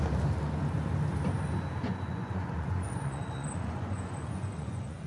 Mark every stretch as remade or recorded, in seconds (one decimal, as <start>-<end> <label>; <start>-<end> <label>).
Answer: 0.0-1.8 recorded; 1.8-5.1 remade